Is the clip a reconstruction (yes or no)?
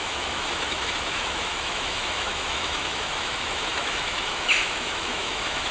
yes